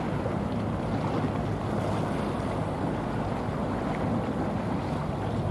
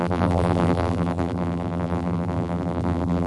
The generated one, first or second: second